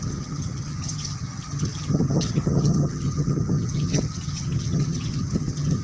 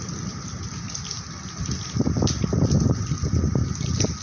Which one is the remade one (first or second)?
first